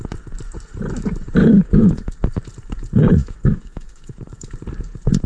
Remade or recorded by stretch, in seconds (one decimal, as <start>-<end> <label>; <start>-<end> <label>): 0.0-1.4 recorded; 1.4-2.1 remade; 2.1-3.2 recorded; 3.2-4.5 remade; 4.5-5.3 recorded